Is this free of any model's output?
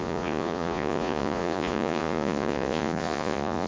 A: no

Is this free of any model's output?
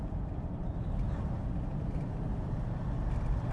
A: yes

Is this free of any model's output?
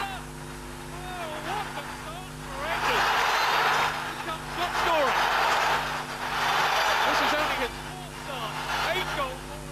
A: yes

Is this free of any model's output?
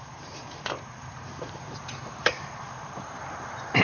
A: no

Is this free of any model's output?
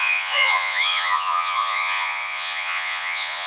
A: no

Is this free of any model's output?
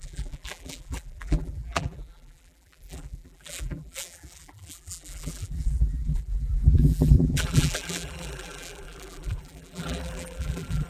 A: no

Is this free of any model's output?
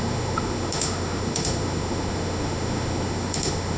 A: no